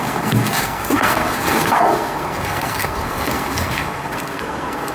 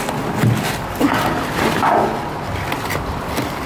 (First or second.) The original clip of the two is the second